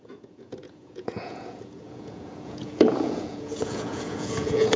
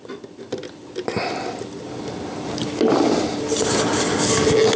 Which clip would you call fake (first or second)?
first